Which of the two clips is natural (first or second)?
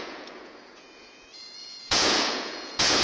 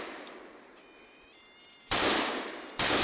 second